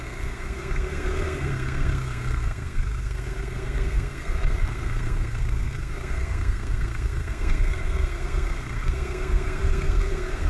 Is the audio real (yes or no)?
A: no